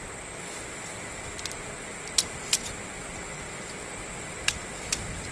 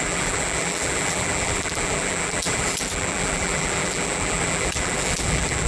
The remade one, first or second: second